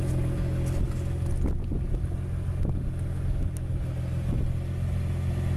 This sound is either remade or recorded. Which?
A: recorded